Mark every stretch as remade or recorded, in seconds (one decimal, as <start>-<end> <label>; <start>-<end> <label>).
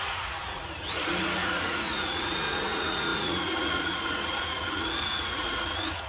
0.0-6.1 remade